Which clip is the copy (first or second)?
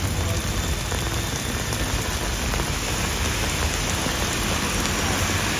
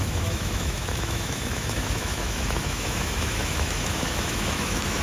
second